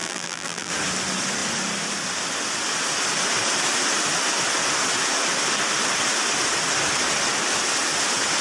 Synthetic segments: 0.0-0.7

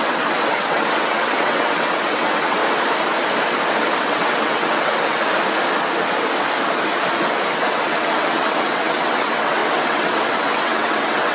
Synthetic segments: 0.0-2.6; 4.0-5.2; 7.5-11.3

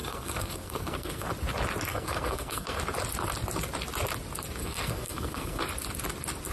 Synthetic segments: 0.0-1.3; 1.9-2.8; 4.6-5.6

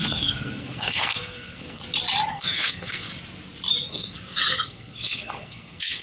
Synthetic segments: 0.0-1.8; 2.3-3.1; 3.9-6.0

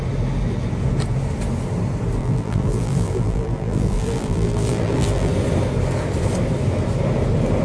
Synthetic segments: 2.2-5.3

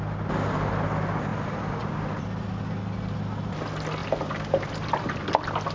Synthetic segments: none